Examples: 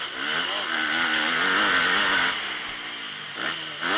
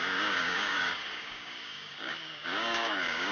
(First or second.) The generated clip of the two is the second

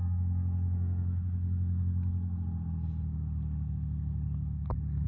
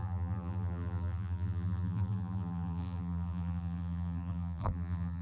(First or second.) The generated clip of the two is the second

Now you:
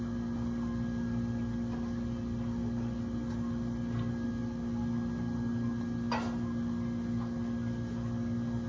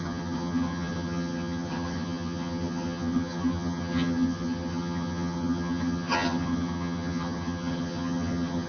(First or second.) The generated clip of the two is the second